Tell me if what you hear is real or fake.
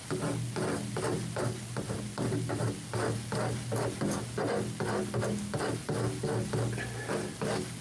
real